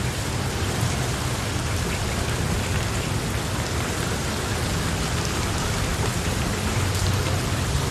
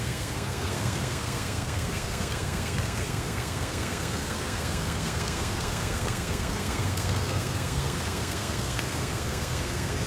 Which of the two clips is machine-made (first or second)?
second